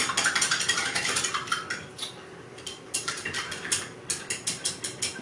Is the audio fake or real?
real